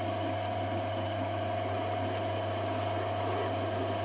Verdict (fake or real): real